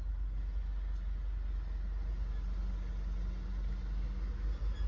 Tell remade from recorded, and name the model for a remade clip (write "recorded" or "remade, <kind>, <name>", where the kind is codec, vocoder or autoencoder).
recorded